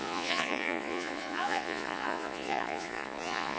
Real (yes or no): no